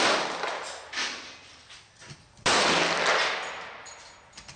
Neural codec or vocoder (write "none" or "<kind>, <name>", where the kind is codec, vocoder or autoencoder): none